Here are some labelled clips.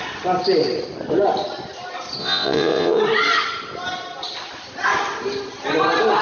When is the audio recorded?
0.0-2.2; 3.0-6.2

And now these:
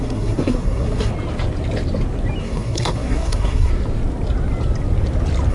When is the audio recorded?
1.1-2.4; 3.7-5.5

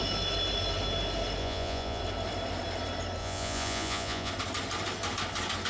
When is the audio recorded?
0.0-1.4; 2.0-3.2; 4.3-5.7

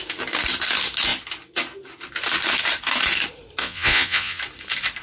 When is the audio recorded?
0.0-3.6; 4.4-5.0